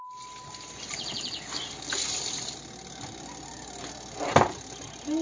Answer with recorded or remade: recorded